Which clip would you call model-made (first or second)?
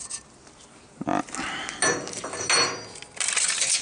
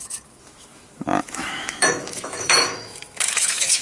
second